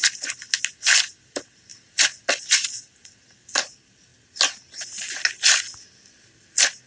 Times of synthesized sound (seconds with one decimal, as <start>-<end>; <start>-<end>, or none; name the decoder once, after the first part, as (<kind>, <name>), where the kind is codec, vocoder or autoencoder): 0.0-0.5 (vocoder, BigVGAN v2); 1.7-2.9